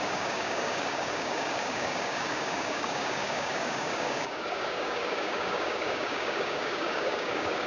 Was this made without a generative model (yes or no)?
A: no